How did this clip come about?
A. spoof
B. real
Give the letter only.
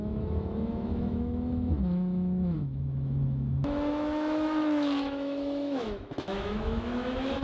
A